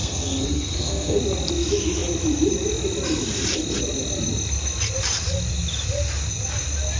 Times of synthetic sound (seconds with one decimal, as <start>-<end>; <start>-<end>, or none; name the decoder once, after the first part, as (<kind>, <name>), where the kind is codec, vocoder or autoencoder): 0.0-1.2 (codec, SNAC)